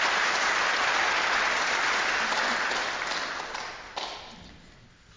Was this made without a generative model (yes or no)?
yes